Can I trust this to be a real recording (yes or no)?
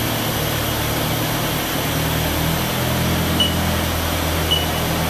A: yes